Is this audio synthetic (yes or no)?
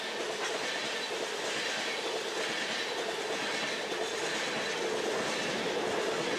no